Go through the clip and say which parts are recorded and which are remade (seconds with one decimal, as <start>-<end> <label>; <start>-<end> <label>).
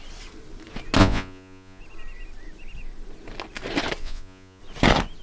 0.0-1.0 recorded; 1.0-1.8 remade; 1.8-4.0 recorded; 4.0-4.6 remade; 4.6-5.2 recorded